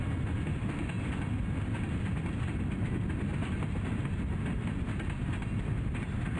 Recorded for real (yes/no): yes